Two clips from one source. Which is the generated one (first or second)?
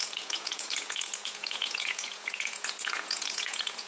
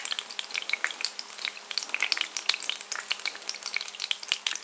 first